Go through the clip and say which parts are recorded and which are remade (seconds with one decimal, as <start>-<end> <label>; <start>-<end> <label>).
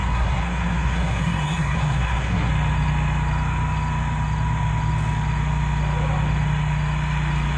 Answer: 0.0-2.5 remade; 2.5-7.6 recorded